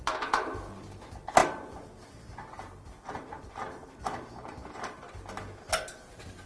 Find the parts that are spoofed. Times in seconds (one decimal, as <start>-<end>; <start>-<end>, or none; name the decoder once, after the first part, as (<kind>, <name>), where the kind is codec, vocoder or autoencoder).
1.4-5.3 (vocoder, BigVGAN v2)